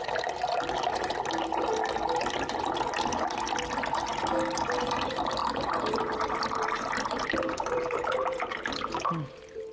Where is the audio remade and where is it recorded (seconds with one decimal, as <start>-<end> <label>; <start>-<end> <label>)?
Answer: 0.0-5.4 recorded; 5.4-8.8 remade; 8.8-9.7 recorded